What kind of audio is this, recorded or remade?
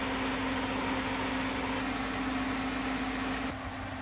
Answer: recorded